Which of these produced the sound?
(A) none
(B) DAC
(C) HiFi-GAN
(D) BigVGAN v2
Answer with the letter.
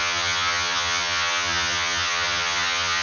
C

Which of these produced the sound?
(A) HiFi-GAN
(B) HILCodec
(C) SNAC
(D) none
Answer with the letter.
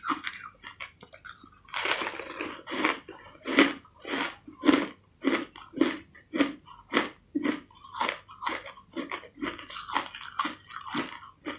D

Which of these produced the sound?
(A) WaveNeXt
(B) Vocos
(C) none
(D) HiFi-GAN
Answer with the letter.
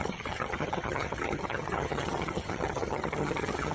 D